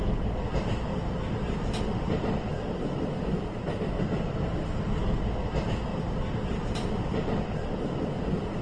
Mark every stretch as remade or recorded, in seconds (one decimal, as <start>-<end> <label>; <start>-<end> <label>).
0.0-5.9 recorded; 5.9-7.8 remade; 7.8-8.6 recorded